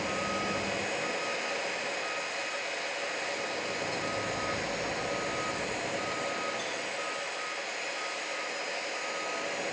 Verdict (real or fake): real